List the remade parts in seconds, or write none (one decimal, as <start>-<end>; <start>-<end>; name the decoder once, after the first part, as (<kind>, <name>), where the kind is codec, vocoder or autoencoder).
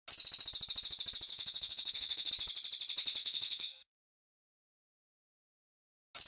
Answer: 1.3-2.3 (codec, SNAC); 3.2-4.0